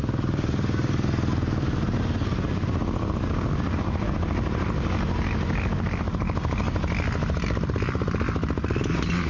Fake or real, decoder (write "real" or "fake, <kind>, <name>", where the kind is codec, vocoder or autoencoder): real